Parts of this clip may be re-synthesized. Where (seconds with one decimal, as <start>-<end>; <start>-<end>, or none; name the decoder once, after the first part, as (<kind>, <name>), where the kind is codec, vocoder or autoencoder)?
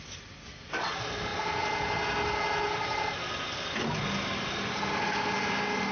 none